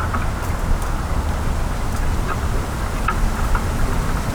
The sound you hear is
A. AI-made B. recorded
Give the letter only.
B